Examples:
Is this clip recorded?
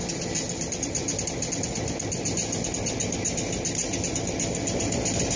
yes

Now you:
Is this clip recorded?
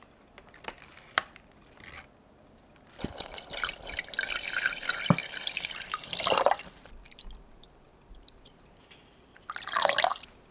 no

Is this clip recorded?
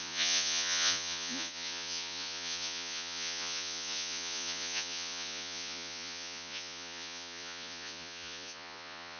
no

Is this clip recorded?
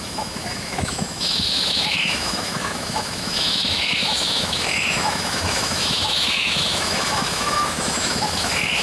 no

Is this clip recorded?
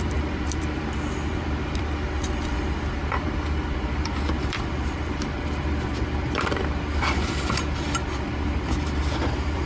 no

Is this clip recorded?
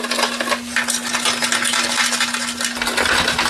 yes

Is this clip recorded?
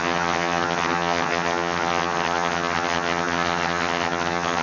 no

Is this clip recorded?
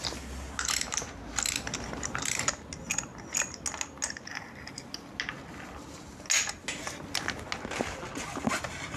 yes